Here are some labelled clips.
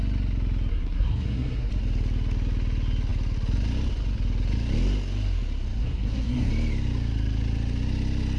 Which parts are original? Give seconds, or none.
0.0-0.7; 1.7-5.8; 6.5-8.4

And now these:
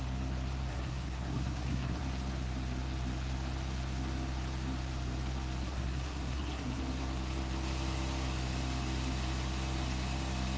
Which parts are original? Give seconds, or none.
0.0-0.7; 2.0-5.6; 6.8-10.6

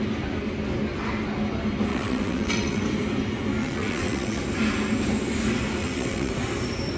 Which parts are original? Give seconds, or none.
0.0-1.9; 2.8-3.6; 4.4-5.8; 6.3-7.0

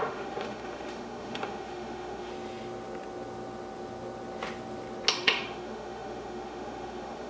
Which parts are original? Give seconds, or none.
2.3-5.1

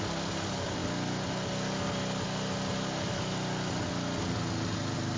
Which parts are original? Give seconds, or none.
0.0-5.2

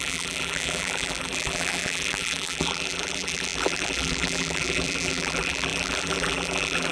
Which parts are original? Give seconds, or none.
none